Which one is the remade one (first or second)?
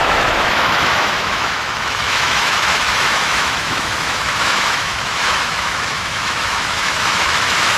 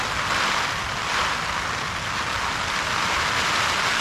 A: first